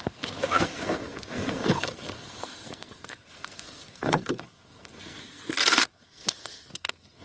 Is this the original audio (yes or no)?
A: no